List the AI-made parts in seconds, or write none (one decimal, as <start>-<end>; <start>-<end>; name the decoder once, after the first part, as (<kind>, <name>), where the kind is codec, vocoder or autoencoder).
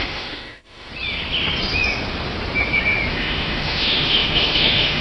0.0-0.9 (autoencoder, DAC-VAE); 3.1-5.0